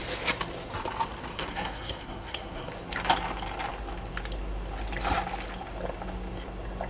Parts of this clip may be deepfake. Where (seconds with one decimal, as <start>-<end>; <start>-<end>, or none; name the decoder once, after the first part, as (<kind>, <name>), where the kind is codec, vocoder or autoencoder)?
1.3-2.7 (codec, SNAC)